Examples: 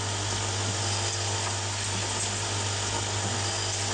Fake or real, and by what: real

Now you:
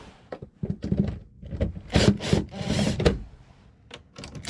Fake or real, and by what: real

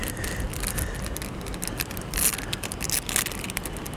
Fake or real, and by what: real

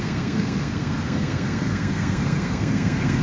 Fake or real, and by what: fake, codec, SNAC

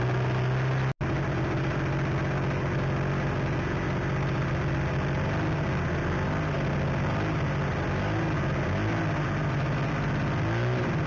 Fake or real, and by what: real